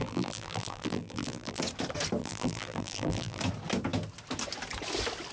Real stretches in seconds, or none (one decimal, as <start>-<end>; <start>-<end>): 1.6-2.2; 3.4-5.3